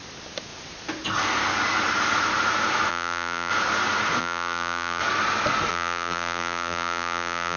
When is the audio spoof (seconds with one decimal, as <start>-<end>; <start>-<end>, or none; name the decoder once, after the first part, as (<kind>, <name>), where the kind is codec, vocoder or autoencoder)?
2.9-3.5 (vocoder, BigVGAN v2); 4.2-5.0; 5.7-7.6